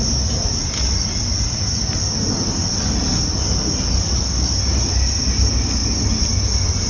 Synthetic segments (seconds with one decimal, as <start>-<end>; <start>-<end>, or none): none

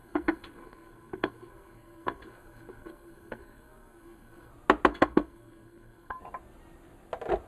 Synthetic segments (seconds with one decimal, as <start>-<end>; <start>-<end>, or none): 0.0-4.5; 4.9-6.2

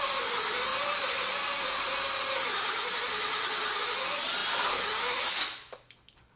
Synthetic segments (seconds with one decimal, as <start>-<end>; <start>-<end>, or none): none